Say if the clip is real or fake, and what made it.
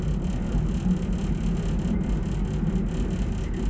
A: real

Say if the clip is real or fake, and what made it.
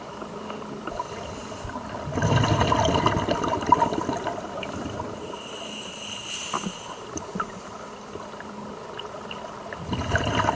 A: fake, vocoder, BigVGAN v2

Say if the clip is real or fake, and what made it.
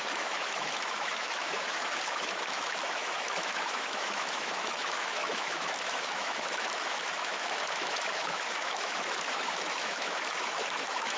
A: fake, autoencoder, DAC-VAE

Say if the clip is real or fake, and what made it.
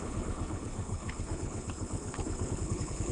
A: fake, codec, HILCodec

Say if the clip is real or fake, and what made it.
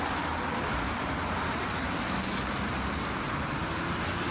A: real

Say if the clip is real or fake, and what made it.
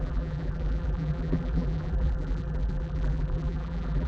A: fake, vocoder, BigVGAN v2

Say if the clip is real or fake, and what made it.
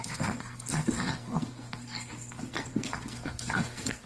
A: fake, codec, SNAC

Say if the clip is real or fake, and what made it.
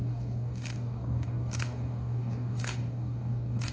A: fake, codec, DAC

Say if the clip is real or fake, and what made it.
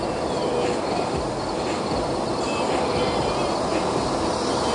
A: real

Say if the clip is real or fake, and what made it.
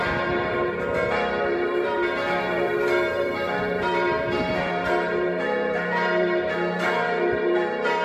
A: fake, vocoder, BigVGAN v2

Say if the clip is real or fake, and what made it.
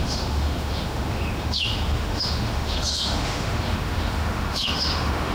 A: fake, autoencoder, DAC-VAE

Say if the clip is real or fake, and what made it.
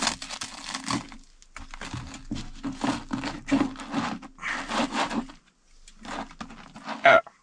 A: real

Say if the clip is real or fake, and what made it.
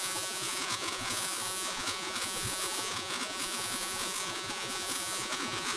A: fake, vocoder, Vocos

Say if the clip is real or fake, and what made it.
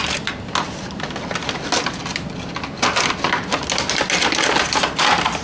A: real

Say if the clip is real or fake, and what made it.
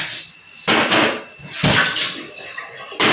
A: real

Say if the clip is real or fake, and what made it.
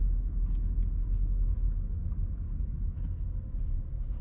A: real